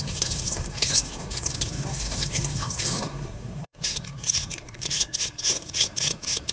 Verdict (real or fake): fake